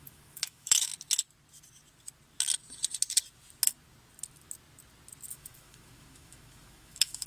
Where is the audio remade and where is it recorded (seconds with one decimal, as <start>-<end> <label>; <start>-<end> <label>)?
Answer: 0.0-0.9 remade; 0.9-5.3 recorded; 5.3-7.3 remade